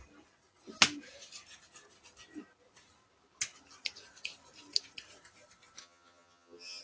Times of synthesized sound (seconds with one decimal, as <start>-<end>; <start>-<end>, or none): 5.8-6.8